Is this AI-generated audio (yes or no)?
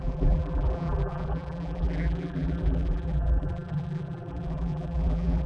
yes